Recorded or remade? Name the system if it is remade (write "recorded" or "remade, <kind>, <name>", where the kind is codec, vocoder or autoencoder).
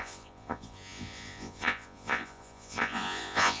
remade, vocoder, Vocos